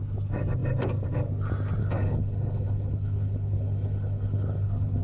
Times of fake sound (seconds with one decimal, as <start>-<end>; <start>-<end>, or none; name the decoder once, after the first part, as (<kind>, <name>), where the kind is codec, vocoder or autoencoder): 1.8-5.0 (codec, HILCodec)